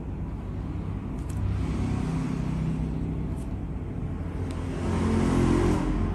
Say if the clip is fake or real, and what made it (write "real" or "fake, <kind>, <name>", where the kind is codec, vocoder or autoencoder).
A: real